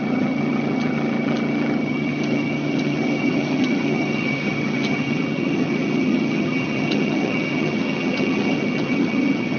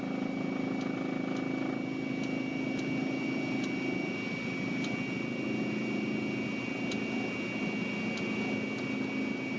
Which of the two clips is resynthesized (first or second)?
first